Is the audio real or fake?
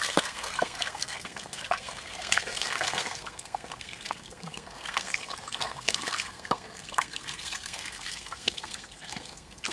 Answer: fake